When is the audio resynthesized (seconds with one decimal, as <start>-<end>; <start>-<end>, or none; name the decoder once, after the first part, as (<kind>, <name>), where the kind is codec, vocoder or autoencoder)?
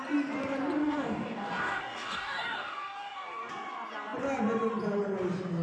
0.8-3.5 (codec, DAC)